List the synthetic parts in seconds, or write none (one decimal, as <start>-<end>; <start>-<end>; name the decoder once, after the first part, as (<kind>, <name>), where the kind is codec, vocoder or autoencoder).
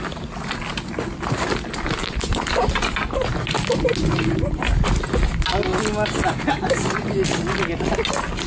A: none